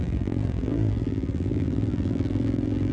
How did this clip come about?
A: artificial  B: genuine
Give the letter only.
A